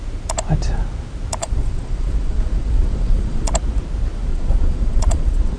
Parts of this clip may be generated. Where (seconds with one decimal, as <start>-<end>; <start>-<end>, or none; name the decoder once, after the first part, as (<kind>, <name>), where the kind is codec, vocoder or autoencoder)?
1.4-3.5 (vocoder, Vocos); 4.3-5.6